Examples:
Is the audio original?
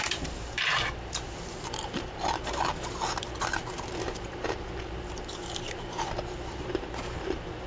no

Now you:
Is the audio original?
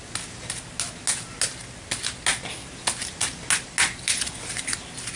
yes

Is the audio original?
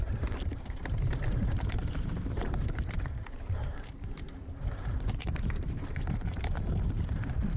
no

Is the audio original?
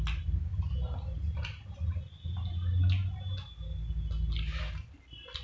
yes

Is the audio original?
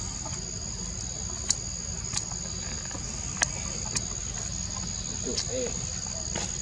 yes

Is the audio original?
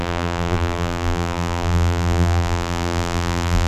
no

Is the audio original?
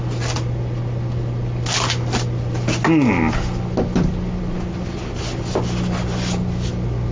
yes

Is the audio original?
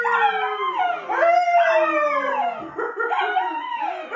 yes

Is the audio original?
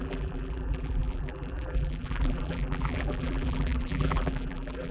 no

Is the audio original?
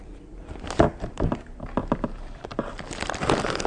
no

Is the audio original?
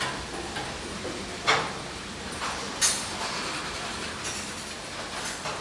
yes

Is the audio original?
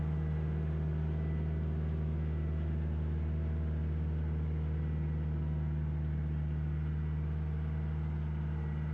yes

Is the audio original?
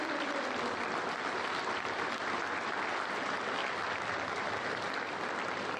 yes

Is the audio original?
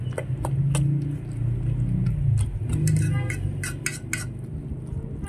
yes